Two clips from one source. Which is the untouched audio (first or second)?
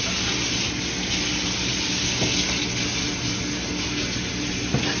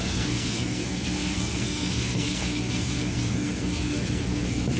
first